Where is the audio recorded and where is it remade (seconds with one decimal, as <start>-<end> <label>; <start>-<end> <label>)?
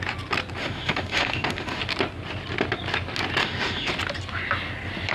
0.0-0.6 recorded; 0.6-1.8 remade; 1.8-3.4 recorded; 3.4-3.9 remade; 3.9-5.1 recorded